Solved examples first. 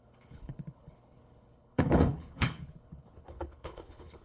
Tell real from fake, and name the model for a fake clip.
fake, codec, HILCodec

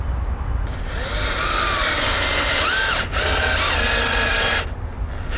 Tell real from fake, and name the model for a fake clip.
real